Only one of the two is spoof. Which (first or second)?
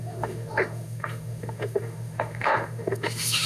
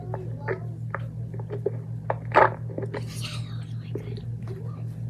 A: first